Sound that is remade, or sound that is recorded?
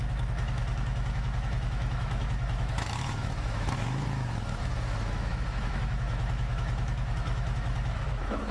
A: remade